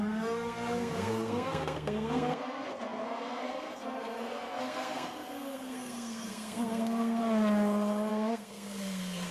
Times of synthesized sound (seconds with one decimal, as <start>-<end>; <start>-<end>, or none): 0.0-7.2; 8.1-9.3